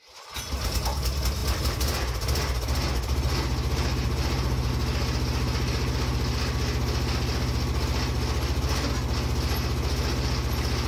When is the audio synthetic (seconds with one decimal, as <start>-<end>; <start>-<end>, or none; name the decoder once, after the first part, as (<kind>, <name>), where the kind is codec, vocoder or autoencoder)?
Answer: none